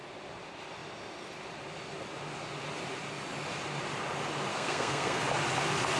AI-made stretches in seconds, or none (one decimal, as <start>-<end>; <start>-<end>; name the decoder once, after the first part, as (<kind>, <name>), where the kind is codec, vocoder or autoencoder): 4.5-5.2 (codec, SNAC)